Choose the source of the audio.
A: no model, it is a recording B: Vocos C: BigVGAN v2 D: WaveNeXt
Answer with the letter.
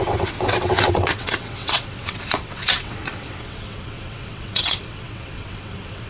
D